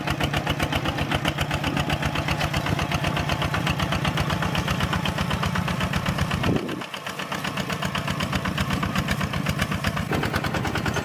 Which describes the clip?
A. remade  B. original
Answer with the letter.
B